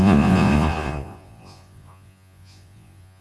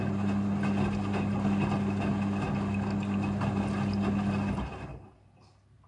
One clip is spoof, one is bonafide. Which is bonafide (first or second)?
second